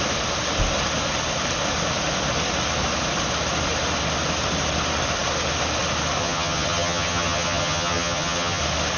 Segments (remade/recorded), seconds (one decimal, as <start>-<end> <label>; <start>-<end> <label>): 0.0-6.2 recorded; 6.2-8.6 remade; 8.6-9.0 recorded